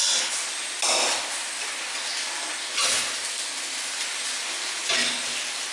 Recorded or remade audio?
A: recorded